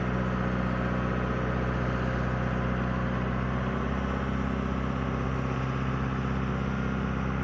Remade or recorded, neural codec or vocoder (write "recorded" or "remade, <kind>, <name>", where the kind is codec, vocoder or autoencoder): recorded